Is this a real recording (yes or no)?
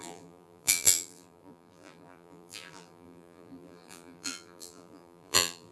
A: no